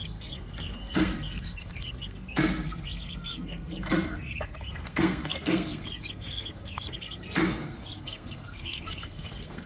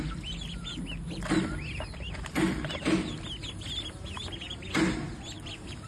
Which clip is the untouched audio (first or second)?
second